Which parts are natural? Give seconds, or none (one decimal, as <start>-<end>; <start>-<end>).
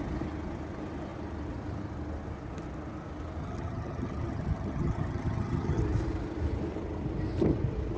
0.0-3.4; 5.8-8.0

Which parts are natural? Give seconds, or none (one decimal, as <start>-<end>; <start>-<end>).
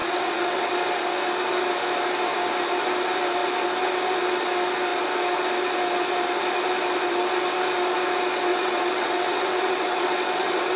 0.7-8.5